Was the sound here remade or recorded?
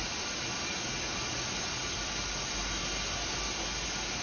recorded